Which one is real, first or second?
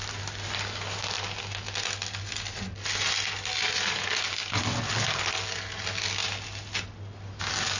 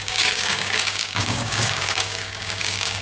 first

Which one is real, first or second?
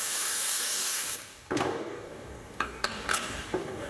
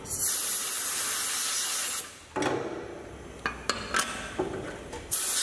second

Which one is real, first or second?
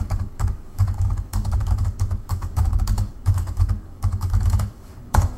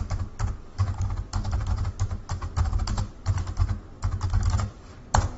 second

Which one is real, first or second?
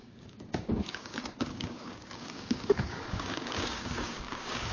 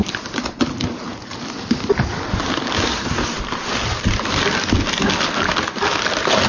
second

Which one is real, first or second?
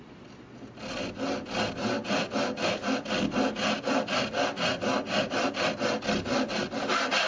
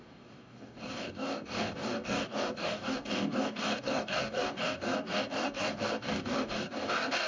first